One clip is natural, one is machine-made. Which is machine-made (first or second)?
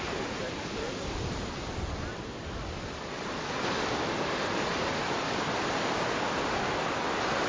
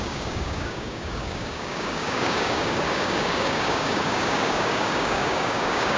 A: second